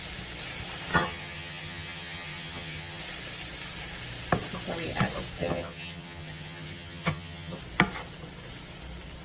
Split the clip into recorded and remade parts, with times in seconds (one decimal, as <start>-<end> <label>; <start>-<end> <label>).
0.0-0.9 recorded; 0.9-3.0 remade; 3.0-5.4 recorded; 5.4-7.6 remade; 7.6-9.2 recorded